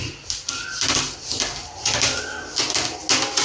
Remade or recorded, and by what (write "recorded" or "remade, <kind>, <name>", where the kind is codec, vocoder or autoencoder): recorded